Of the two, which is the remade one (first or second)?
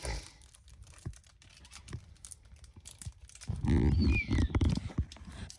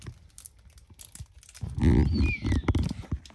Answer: first